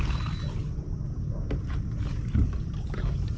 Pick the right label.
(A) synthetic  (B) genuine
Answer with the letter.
B